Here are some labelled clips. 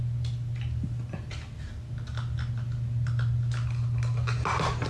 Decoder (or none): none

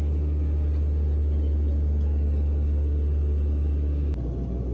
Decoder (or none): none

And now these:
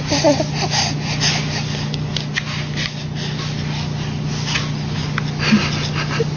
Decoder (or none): none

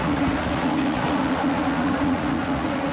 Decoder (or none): vocoder, Vocos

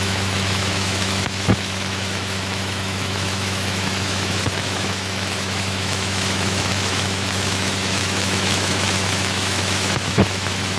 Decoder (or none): autoencoder, DAC-VAE